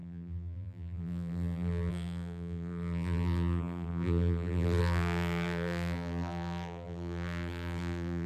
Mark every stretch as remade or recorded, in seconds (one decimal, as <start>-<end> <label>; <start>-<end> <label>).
0.0-8.3 remade